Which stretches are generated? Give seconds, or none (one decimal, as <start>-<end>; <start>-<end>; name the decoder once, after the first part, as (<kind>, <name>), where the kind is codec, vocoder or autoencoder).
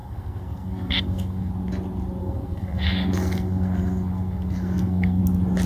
0.0-1.5 (codec, SNAC); 2.2-5.2